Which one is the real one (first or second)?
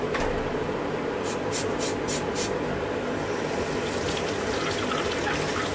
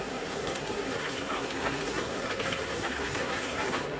first